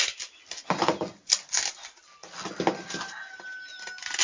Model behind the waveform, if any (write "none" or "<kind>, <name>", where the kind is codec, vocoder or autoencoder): none